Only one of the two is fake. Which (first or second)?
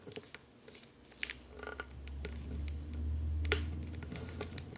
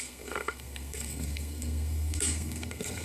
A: second